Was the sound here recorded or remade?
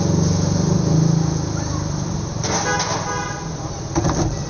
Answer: recorded